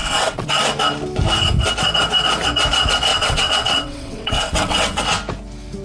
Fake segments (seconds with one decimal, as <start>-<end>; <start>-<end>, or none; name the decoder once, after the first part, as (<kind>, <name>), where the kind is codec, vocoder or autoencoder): 0.0-0.5 (vocoder, WaveNeXt); 3.1-5.0